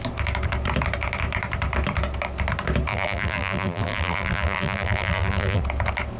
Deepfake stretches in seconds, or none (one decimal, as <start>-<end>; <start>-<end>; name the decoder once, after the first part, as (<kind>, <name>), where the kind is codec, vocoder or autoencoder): 2.9-5.6 (vocoder, BigVGAN v2)